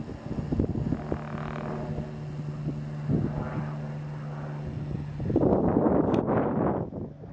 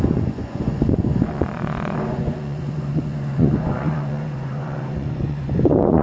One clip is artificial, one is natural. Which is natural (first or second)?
first